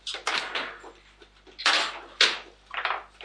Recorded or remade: recorded